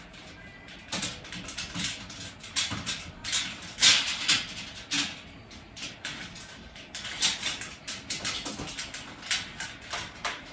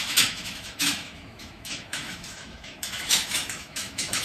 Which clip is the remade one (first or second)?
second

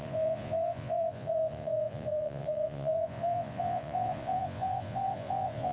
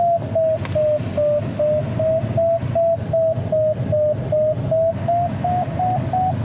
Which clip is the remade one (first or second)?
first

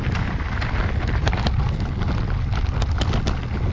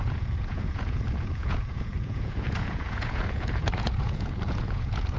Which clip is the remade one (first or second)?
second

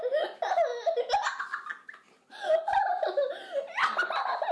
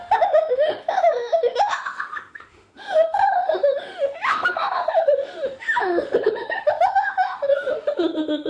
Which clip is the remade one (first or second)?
second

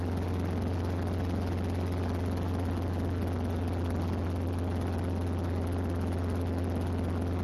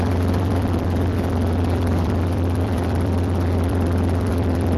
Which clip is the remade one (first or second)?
second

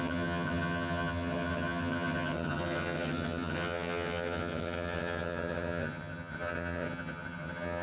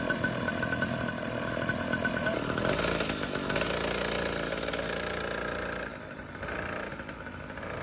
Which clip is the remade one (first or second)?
first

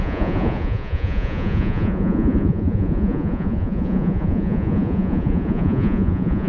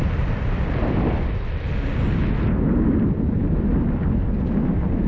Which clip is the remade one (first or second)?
first